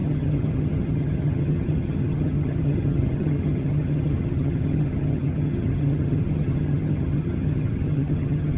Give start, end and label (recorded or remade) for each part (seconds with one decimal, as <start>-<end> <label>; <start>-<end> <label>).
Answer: 0.0-8.6 remade